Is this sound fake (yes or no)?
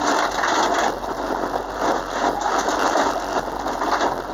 no